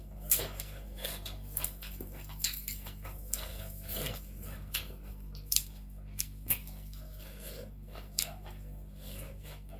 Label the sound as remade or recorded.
remade